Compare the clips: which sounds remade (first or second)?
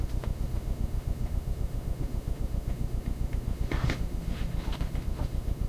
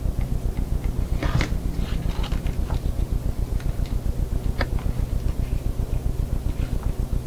first